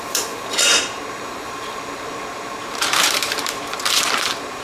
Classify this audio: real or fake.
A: fake